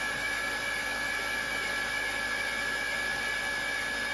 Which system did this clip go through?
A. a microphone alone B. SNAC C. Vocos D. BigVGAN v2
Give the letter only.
A